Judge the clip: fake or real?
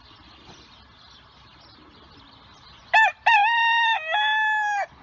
real